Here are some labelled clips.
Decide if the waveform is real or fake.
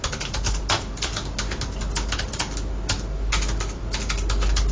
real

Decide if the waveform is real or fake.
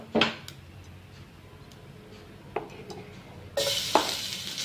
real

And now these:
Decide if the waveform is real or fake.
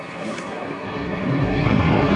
fake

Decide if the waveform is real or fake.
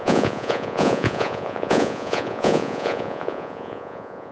fake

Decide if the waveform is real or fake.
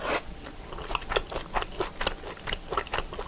real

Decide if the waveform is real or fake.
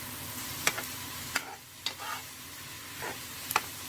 real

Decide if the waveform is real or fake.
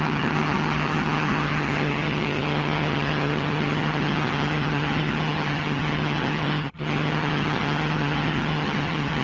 fake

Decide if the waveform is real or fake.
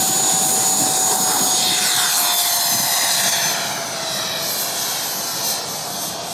real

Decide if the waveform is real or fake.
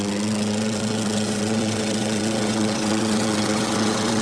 fake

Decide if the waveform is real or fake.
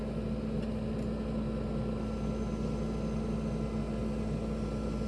real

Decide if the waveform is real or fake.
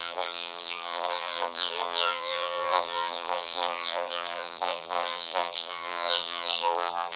fake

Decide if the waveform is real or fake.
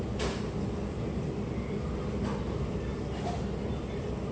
real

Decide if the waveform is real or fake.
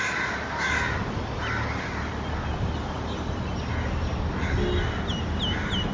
real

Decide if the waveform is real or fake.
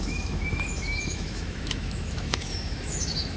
fake